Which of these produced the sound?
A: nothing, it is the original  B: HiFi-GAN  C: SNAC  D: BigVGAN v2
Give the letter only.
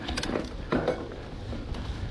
A